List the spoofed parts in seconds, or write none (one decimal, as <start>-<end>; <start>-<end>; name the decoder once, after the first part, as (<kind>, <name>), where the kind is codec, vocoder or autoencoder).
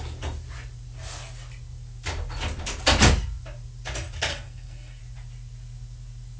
4.3-5.0 (codec, SNAC)